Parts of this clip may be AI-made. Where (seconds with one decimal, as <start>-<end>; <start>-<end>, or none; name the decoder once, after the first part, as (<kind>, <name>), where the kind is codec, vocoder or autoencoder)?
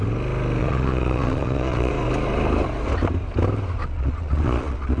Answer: 0.6-1.9 (vocoder, Vocos); 3.8-5.0